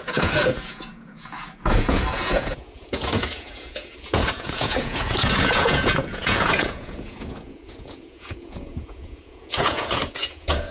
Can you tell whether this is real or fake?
fake